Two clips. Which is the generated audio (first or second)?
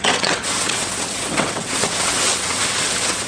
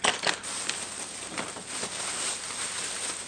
first